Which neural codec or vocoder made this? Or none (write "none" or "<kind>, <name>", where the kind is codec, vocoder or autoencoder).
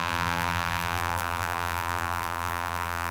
vocoder, BigVGAN v2